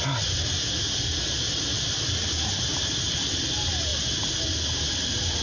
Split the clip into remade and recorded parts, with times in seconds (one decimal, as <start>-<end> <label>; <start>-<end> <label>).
0.0-5.4 recorded